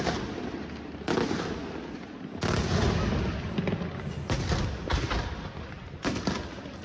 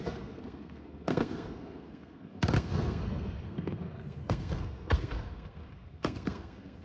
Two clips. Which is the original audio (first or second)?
first